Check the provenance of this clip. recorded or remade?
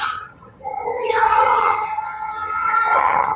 remade